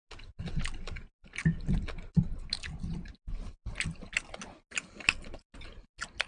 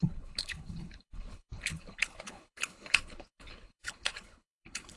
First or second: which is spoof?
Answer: second